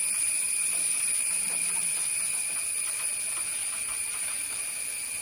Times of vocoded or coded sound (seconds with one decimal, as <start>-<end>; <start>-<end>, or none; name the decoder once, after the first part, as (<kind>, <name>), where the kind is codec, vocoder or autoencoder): 0.0-3.1 (vocoder, BigVGAN v2); 3.5-4.6